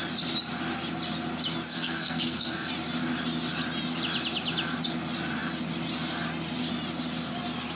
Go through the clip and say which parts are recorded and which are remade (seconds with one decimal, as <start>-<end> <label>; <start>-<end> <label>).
0.0-1.7 recorded; 1.7-2.7 remade; 2.7-7.8 recorded